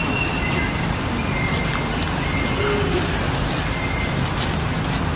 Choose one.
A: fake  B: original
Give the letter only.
B